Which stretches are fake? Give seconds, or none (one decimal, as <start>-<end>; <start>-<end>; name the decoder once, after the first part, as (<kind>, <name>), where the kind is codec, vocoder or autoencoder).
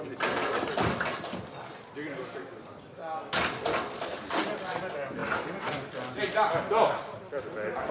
0.0-4.1 (vocoder, BigVGAN v2); 4.6-5.2; 6.9-7.9